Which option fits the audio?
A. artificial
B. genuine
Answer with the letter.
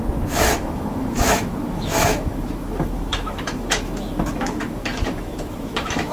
A